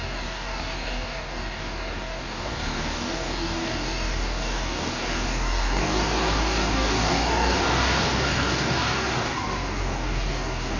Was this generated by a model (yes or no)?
yes